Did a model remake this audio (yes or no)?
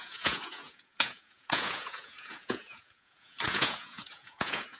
yes